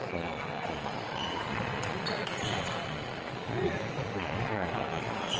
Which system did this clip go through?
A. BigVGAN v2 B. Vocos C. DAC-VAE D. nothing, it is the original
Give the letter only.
B